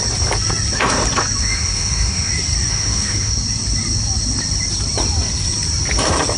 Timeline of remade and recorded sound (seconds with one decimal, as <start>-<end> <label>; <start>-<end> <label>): 0.0-1.4 recorded; 1.4-2.3 remade; 2.3-2.7 recorded; 2.7-3.3 remade; 3.3-6.4 recorded